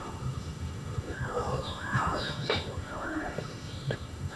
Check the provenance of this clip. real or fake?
fake